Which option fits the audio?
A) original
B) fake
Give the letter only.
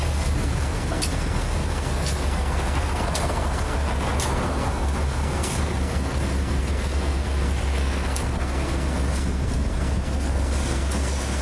B